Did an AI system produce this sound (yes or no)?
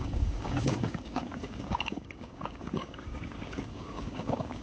yes